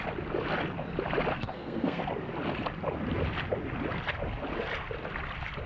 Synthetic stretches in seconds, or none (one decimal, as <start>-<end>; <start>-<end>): 1.3-2.0